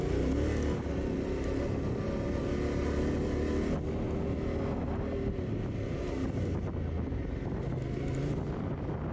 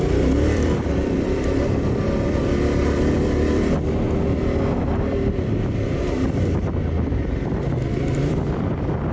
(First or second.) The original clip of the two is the first